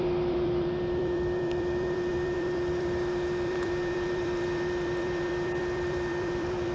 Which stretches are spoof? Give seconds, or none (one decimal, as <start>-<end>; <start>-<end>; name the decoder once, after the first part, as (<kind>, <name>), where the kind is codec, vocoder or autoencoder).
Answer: 0.0-6.7 (vocoder, BigVGAN v2)